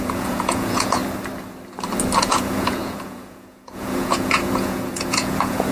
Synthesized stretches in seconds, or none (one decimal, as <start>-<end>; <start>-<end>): 0.0-1.0; 2.2-5.7